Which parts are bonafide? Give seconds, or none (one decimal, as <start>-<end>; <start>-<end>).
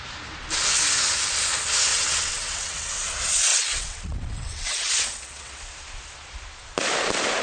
0.0-1.9; 2.9-3.5; 5.6-7.4